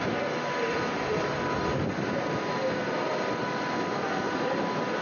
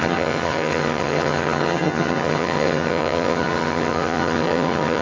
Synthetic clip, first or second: second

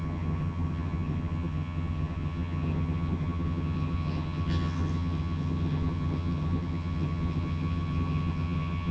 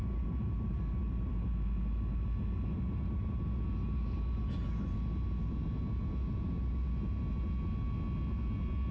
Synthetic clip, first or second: first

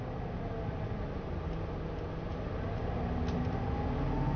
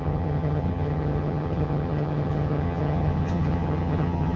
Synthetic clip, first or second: second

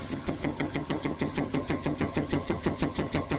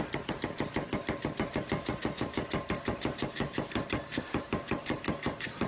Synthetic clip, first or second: first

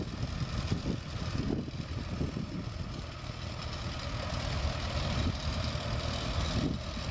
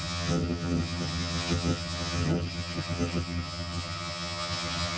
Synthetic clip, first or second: second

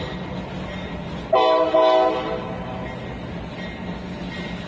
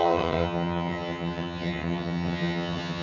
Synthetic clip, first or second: second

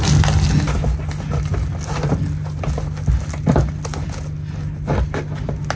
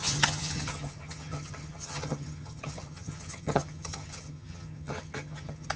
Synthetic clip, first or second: second